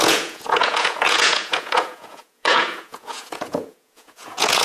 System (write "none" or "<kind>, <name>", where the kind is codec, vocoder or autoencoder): vocoder, Vocos